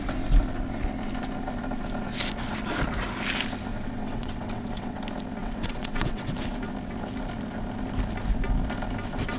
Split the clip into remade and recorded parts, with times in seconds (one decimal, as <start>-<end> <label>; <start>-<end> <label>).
0.0-3.7 recorded; 3.7-5.0 remade; 5.0-5.4 recorded; 5.4-6.3 remade; 6.3-9.4 recorded